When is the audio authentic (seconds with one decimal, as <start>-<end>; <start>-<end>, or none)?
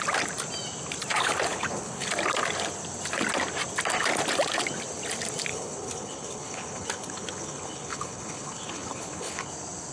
0.0-1.5; 2.1-5.5; 9.5-9.9